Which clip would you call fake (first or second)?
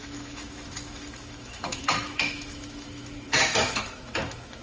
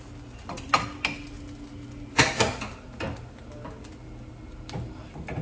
first